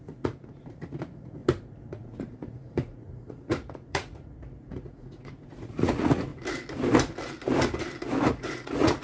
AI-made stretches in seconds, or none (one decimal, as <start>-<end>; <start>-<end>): 0.0-1.4; 1.9-6.3; 8.3-9.0